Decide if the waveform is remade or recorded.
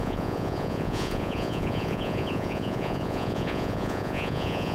remade